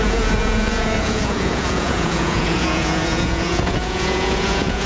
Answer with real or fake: fake